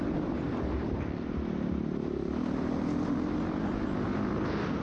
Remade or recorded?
recorded